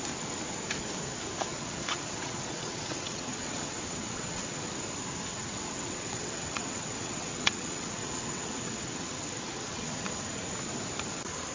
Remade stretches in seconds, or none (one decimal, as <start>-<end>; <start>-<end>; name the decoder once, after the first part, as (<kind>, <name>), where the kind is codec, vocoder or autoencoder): 1.5-4.7 (vocoder, WaveNeXt); 5.3-10.2